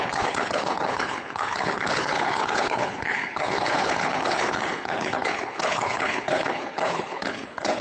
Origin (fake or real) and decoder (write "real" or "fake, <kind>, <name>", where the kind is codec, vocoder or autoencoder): fake, codec, HILCodec